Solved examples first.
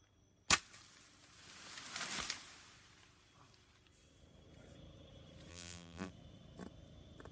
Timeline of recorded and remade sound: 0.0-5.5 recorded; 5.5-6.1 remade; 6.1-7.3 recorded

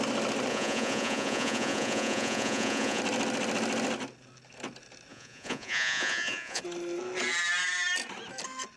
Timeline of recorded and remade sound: 0.0-0.5 recorded; 0.5-3.0 remade; 3.0-5.1 recorded; 5.1-6.6 remade; 6.6-8.8 recorded